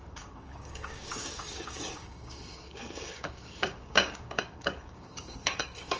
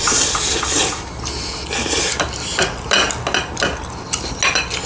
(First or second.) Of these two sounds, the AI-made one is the first